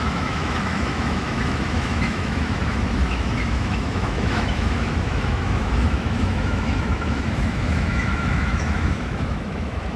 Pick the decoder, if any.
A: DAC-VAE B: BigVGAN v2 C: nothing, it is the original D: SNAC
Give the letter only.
A